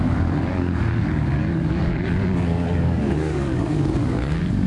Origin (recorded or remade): remade